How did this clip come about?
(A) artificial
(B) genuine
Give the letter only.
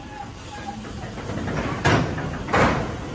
B